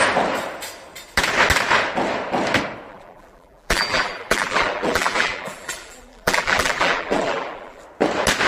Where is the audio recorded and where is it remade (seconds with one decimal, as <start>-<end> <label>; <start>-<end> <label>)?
0.0-2.9 recorded; 2.9-7.8 remade; 7.8-8.5 recorded